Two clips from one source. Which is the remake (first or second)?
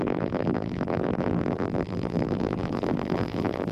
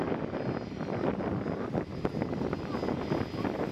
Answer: first